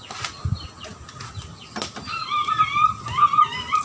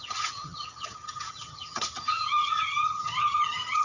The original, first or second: first